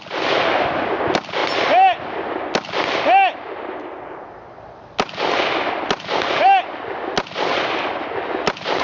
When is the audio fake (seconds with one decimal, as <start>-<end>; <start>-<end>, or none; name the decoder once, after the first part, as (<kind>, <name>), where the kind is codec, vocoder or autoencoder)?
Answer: none